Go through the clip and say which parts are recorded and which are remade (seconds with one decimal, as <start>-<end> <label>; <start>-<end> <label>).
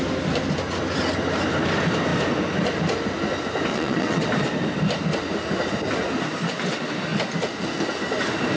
0.0-3.7 recorded; 3.7-4.2 remade; 4.2-8.6 recorded